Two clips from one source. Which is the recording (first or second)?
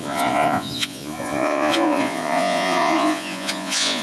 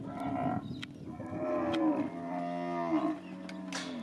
second